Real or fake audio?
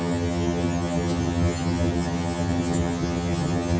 fake